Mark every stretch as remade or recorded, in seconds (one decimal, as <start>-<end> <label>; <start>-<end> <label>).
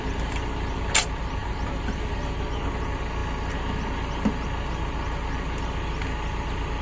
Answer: 0.0-6.8 recorded